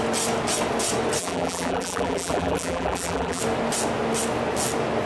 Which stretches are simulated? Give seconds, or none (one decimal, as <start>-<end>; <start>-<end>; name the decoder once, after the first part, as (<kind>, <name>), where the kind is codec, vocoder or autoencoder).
1.2-3.4 (vocoder, BigVGAN v2)